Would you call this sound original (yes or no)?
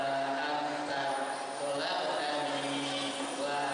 yes